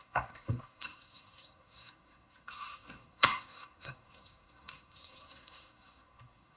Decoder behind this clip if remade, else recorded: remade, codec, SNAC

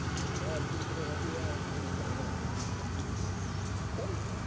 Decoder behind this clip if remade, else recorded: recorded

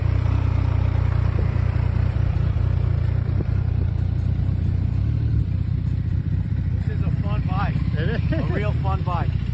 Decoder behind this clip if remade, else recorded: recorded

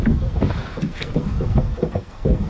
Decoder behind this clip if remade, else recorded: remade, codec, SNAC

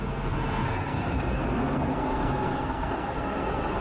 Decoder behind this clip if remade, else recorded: remade, codec, SNAC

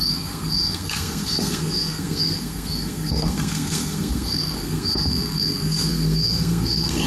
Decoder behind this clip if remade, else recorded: remade, codec, SNAC